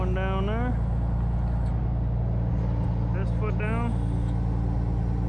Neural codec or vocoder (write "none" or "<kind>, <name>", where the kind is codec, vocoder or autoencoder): none